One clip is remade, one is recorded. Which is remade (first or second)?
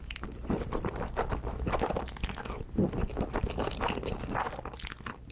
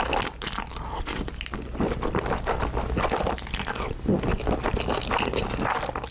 first